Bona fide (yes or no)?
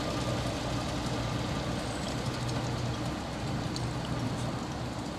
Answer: yes